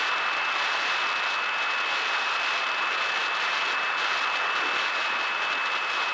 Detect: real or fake real